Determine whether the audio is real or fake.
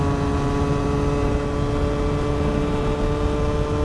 real